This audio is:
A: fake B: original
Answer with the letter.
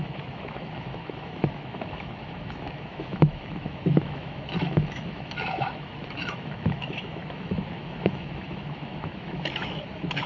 A